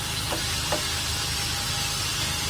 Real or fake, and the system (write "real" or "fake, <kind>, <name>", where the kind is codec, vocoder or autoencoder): real